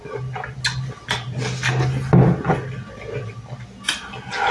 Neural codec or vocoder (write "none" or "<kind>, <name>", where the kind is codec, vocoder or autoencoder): none